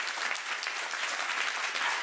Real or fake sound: real